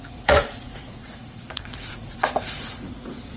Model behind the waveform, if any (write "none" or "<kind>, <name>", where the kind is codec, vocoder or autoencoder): vocoder, Vocos